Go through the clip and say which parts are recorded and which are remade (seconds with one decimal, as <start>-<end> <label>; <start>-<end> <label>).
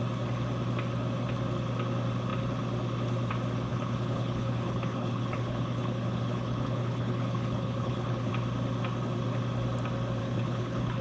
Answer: 0.0-3.7 recorded; 3.7-8.3 remade; 8.3-10.2 recorded; 10.2-11.0 remade